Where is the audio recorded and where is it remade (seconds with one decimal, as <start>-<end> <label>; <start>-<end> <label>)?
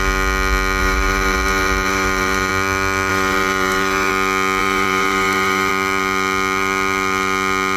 0.0-0.8 recorded; 0.8-2.5 remade; 2.5-3.1 recorded; 3.1-4.1 remade; 4.1-4.6 recorded; 4.6-5.7 remade; 5.7-7.8 recorded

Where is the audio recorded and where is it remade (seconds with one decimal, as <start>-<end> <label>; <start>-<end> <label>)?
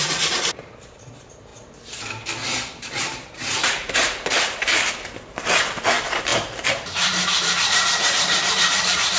0.0-1.5 remade; 1.5-3.0 recorded; 3.0-9.2 remade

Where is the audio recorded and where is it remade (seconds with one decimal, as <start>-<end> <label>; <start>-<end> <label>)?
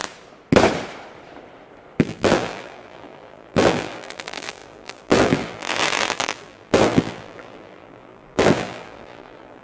0.0-2.0 recorded; 2.0-9.6 remade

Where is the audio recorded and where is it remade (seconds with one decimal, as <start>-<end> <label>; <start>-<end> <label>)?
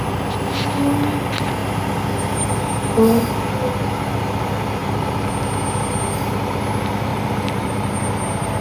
0.0-4.8 recorded; 4.8-5.3 remade; 5.3-7.1 recorded; 7.1-7.9 remade; 7.9-8.6 recorded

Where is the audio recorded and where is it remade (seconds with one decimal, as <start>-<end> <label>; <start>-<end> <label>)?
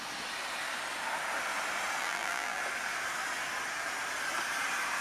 0.0-2.0 recorded; 2.0-2.6 remade; 2.6-5.0 recorded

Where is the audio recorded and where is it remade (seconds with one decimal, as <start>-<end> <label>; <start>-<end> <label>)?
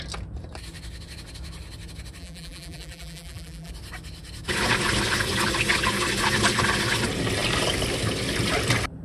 0.0-2.2 recorded; 2.2-3.7 remade; 3.7-9.0 recorded